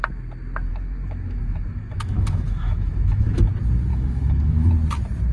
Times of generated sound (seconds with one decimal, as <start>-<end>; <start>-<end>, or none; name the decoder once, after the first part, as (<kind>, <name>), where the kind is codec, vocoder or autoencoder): 0.7-3.4 (autoencoder, DAC-VAE); 3.9-4.7